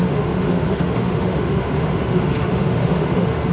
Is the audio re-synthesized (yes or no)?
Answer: yes